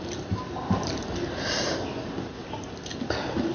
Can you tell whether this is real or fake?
real